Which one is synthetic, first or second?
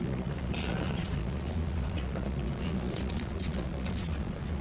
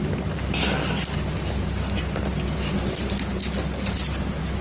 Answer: first